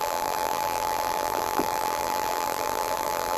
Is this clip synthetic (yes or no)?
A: yes